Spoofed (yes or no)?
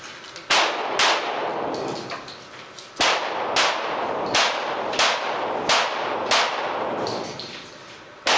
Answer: no